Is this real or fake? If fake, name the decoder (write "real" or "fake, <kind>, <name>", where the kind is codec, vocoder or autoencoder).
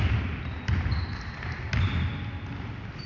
real